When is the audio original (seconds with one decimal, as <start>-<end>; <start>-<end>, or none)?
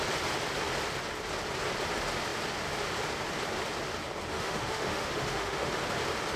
0.0-4.3; 5.7-6.4